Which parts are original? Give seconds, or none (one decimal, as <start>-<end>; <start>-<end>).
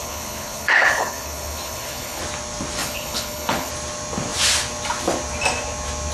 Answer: 2.2-2.8; 3.7-6.1